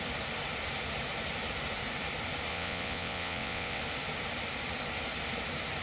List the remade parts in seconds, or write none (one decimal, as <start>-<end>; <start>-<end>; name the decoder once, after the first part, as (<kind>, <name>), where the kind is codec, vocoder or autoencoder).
2.5-3.8 (vocoder, WaveNeXt)